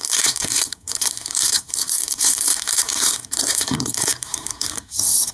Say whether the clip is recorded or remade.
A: remade